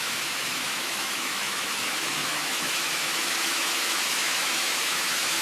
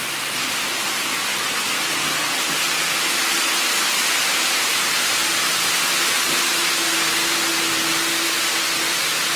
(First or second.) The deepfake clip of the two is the first